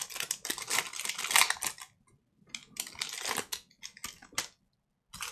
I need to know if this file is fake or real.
real